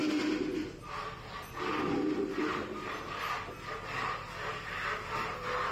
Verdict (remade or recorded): recorded